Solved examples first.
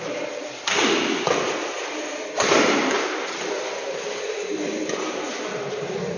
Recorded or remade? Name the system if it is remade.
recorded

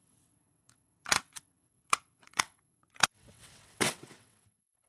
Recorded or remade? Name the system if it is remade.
remade, vocoder, WaveNeXt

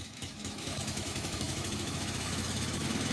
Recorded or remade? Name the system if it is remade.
remade, autoencoder, DAC-VAE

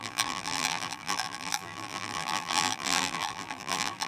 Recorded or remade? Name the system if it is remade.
remade, vocoder, BigVGAN v2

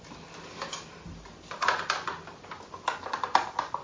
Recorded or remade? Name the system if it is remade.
recorded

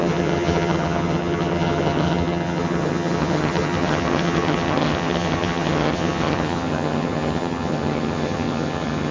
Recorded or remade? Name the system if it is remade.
remade, vocoder, HiFi-GAN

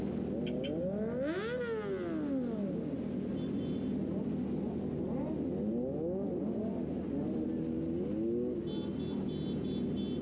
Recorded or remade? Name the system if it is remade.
recorded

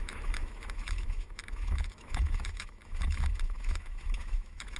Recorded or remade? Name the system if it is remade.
remade, autoencoder, DAC-VAE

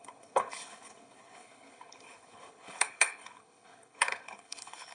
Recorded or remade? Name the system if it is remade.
remade, codec, HILCodec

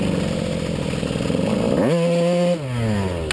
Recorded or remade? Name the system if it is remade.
recorded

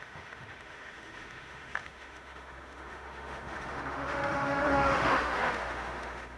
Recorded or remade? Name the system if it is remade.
remade, autoencoder, DAC-VAE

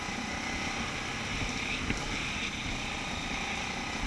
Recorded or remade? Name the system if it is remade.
recorded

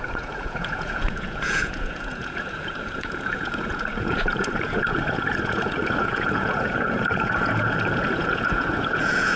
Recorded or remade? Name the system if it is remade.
remade, vocoder, Vocos